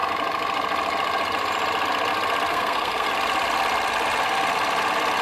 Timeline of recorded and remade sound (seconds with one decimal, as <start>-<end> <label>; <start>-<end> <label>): 0.0-2.5 recorded; 2.5-3.1 remade; 3.1-5.2 recorded